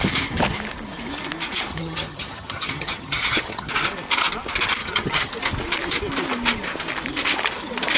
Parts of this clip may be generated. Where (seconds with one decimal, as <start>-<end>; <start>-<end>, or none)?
1.7-3.7; 4.8-5.3